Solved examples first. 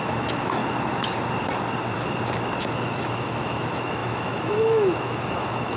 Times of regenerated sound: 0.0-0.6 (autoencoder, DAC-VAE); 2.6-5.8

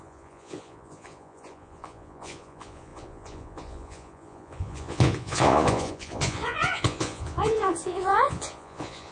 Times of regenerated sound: 0.0-9.1 (vocoder, Vocos)

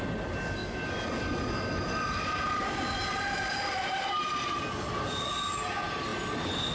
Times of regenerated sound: 0.6-4.6 (vocoder, BigVGAN v2)

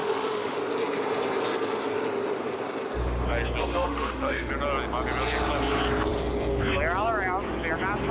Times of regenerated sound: 0.0-0.6 (autoencoder, DAC-VAE); 3.6-4.5

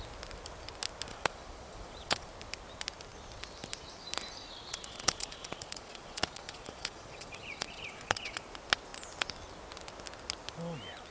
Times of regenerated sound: 1.1-2.3 (vocoder, Vocos); 4.7-8.4

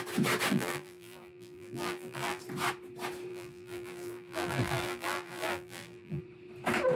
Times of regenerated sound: 0.5-2.4 (vocoder, BigVGAN v2); 3.3-6.2